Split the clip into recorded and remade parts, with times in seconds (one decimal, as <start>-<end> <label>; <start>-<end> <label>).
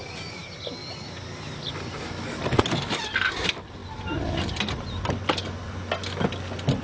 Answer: 0.0-6.8 recorded